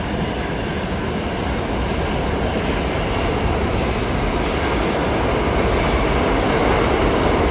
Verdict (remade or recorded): recorded